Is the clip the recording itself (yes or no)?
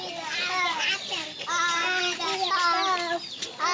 yes